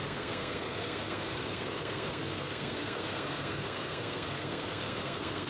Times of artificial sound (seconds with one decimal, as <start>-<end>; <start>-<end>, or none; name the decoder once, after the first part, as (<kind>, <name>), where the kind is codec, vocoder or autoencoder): 0.0-5.5 (codec, SNAC)